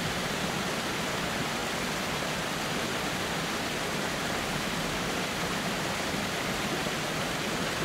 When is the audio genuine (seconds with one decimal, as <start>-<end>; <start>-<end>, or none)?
1.6-5.0